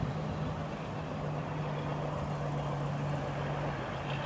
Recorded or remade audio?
recorded